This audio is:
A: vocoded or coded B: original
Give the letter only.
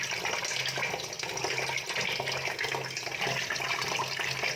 B